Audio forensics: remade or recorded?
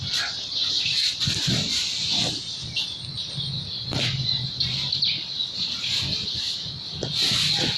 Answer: recorded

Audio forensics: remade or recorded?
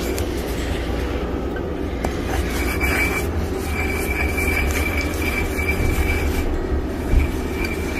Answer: recorded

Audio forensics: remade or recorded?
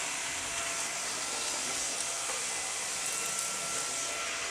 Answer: recorded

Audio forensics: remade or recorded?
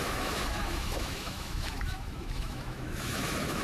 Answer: remade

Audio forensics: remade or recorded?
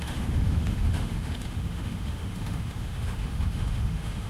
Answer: remade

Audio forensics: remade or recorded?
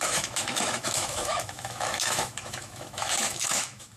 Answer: remade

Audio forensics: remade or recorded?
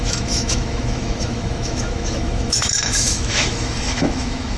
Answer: remade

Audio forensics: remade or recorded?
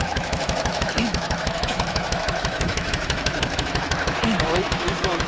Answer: remade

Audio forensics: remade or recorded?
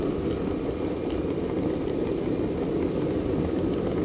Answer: recorded